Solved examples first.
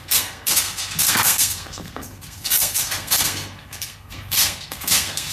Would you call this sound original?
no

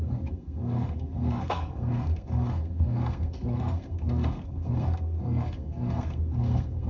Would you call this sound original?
no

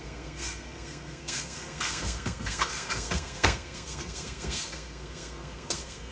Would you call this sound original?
no